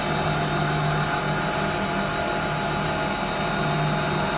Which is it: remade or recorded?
recorded